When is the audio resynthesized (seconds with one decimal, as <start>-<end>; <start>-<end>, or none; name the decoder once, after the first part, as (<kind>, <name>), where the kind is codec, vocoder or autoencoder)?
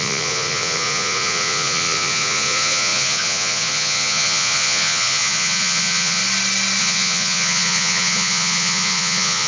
0.0-6.2 (vocoder, Vocos); 6.8-9.5